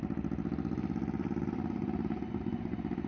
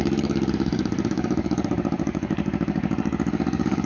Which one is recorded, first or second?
first